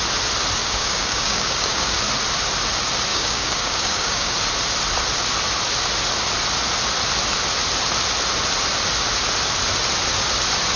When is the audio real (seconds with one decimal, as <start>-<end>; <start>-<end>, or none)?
0.0-0.6; 2.0-3.1; 4.3-10.8